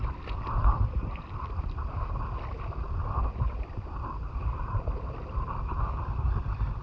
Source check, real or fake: fake